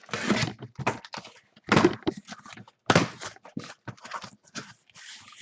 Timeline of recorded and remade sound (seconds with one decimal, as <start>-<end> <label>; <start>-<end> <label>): 0.0-5.4 recorded